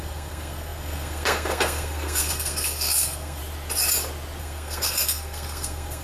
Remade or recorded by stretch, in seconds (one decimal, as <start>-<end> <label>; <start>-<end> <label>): 0.0-3.4 remade; 3.4-4.4 recorded; 4.4-6.0 remade